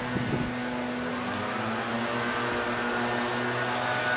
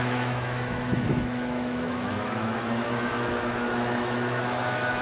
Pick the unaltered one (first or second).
first